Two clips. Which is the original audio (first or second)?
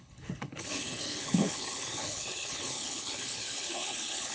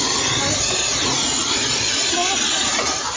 second